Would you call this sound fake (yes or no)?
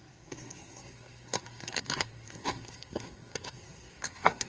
yes